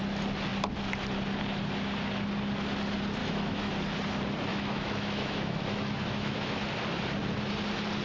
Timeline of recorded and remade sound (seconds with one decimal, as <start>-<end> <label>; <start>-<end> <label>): 0.0-3.2 recorded; 3.2-3.7 remade; 3.7-4.5 recorded; 4.5-6.6 remade; 6.6-8.0 recorded